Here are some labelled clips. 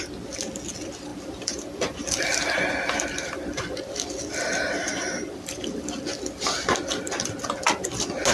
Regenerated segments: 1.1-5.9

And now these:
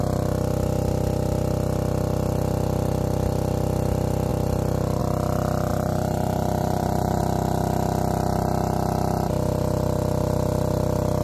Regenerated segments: 5.7-7.2

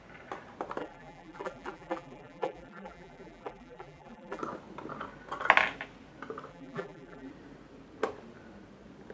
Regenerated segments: 0.8-4.4; 6.5-7.3

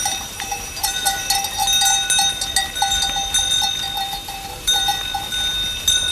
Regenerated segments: 0.0-1.2; 4.0-4.9